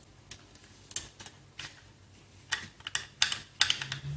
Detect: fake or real real